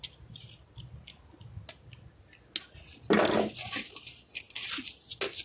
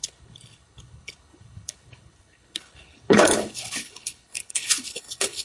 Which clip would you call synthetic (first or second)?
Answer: second